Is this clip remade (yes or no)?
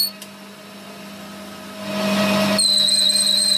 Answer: no